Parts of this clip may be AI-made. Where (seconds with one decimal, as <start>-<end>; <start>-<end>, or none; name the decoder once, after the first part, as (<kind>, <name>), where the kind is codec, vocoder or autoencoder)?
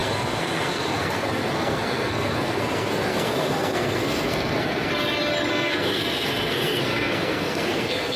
0.0-4.9 (codec, SNAC); 5.5-8.2